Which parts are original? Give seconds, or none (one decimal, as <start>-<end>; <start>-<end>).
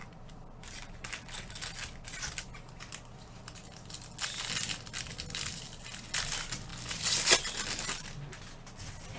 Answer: 0.0-9.2